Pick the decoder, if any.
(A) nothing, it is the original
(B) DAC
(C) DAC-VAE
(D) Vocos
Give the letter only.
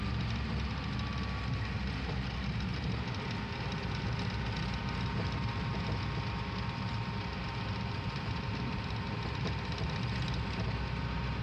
A